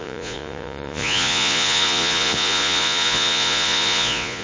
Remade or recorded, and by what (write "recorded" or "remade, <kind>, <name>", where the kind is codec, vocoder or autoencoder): remade, vocoder, Vocos